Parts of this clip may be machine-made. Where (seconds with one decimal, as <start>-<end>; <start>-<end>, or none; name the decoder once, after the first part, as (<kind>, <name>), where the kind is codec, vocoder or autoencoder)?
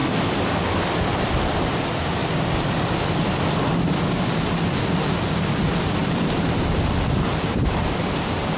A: 6.0-8.2 (vocoder, BigVGAN v2)